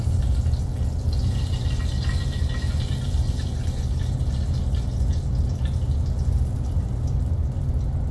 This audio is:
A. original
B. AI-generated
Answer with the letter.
A